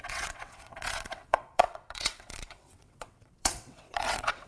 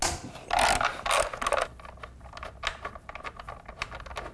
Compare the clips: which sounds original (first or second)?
second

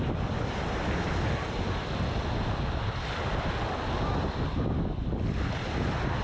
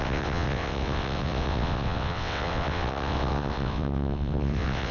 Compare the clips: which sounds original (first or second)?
first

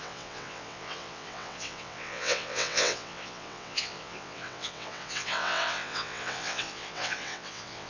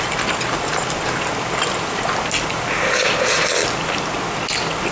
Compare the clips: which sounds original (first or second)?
second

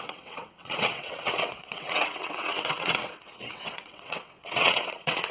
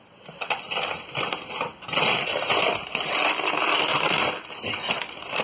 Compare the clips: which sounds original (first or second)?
second